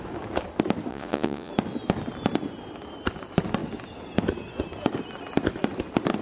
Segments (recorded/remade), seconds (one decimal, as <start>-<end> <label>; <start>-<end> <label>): 0.0-0.9 recorded; 0.9-1.5 remade; 1.5-6.2 recorded